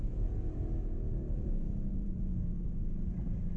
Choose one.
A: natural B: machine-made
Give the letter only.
B